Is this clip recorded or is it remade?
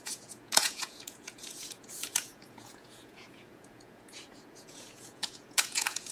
remade